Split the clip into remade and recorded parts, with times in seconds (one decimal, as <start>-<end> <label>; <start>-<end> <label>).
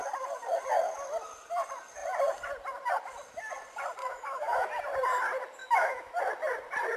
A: 0.0-4.0 recorded; 4.0-4.7 remade; 4.7-5.6 recorded; 5.6-6.2 remade; 6.2-7.0 recorded